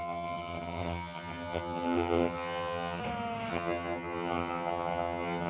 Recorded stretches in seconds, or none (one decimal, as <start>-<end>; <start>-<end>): 3.0-3.5